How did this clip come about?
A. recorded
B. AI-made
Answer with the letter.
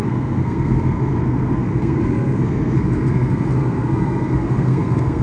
B